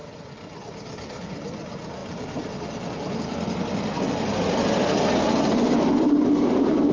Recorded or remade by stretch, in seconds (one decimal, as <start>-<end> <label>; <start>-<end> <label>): 0.0-6.9 recorded